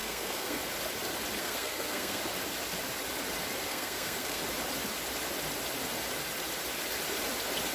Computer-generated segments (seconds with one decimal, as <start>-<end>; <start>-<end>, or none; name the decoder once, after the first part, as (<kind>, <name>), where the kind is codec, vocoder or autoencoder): 0.0-0.6 (codec, SNAC); 1.4-2.2; 3.7-4.4